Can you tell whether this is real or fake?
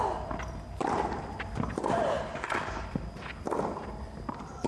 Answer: real